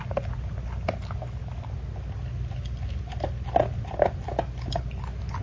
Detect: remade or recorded recorded